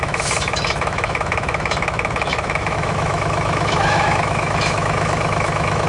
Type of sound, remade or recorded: remade